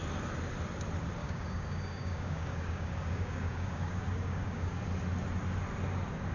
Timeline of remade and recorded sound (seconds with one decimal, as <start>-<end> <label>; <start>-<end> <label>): 0.0-1.2 recorded; 1.2-4.8 remade; 4.8-6.3 recorded